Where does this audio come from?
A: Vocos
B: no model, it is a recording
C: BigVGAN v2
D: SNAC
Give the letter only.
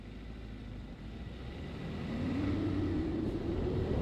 B